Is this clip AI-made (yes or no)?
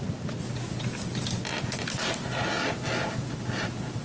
no